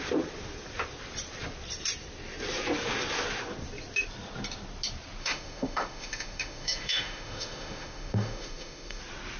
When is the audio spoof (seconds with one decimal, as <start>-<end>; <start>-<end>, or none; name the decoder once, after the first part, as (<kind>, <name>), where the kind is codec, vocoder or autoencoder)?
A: 5.2-9.0 (autoencoder, DAC-VAE)